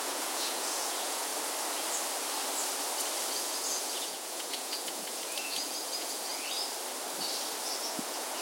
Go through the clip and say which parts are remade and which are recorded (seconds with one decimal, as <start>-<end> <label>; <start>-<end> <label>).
0.0-1.3 remade; 1.3-3.3 recorded; 3.3-6.3 remade; 6.3-7.8 recorded; 7.8-8.4 remade